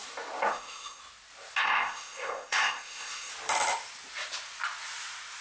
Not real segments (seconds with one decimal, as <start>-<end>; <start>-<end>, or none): 0.5-1.0; 1.6-3.3